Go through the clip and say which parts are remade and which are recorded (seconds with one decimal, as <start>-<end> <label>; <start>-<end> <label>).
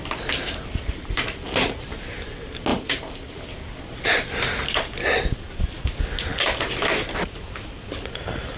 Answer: 0.0-2.7 recorded; 2.7-3.3 remade; 3.3-8.6 recorded